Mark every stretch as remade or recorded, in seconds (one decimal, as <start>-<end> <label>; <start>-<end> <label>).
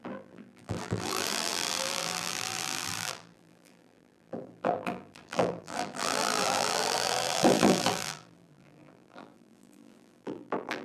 0.0-10.8 remade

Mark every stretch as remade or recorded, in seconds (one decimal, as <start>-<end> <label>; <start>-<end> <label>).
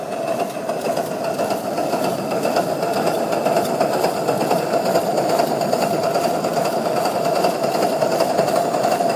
0.0-9.2 recorded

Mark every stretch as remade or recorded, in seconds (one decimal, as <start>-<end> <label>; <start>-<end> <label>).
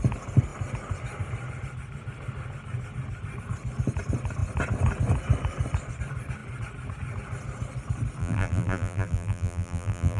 0.0-8.2 recorded; 8.2-10.2 remade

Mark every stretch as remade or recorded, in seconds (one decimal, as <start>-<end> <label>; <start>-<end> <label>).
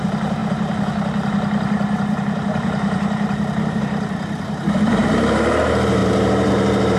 0.0-5.0 remade; 5.0-5.6 recorded; 5.6-7.0 remade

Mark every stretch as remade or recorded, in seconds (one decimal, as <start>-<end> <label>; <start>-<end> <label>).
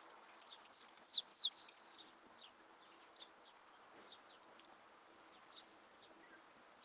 0.0-6.8 remade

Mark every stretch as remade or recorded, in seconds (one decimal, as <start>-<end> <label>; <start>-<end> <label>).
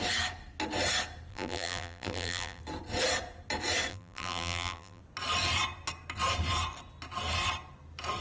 0.0-1.3 recorded; 1.3-2.6 remade; 2.6-3.9 recorded; 3.9-5.0 remade; 5.0-8.2 recorded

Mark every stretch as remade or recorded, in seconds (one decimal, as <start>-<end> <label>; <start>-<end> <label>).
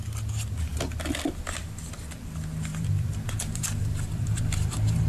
0.0-2.7 recorded; 2.7-5.1 remade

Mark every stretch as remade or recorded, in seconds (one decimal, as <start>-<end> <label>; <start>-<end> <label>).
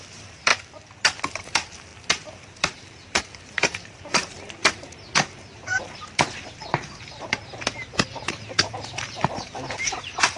0.0-0.5 remade; 0.5-1.3 recorded; 1.3-10.4 remade